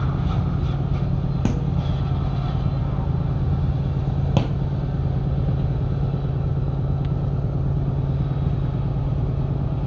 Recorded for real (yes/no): yes